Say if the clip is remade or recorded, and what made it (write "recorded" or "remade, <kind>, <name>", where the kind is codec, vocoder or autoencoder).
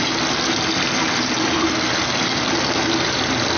recorded